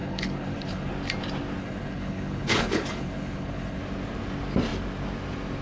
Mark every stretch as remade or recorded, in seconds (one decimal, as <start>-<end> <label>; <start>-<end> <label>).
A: 0.0-0.9 remade; 0.9-1.6 recorded; 1.6-3.8 remade; 3.8-5.6 recorded